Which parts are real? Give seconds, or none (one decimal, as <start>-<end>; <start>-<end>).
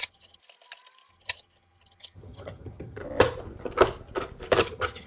0.4-1.1; 3.0-4.6